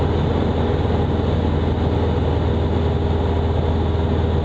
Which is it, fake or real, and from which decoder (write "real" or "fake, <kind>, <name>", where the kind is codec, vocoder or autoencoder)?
real